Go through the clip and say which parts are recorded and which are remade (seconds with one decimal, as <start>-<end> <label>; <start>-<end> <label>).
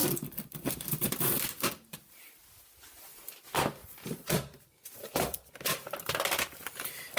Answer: 0.0-2.4 remade; 2.4-3.8 recorded; 3.8-5.5 remade; 5.5-7.2 recorded